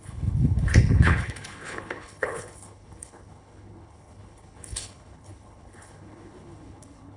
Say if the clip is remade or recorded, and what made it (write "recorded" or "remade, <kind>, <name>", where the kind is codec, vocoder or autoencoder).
remade, codec, HILCodec